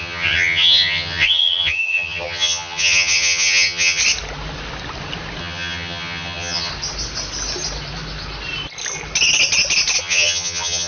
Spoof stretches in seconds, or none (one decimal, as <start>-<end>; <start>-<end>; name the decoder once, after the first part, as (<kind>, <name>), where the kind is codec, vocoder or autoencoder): 0.0-4.0 (vocoder, HiFi-GAN); 5.4-6.7; 10.0-10.9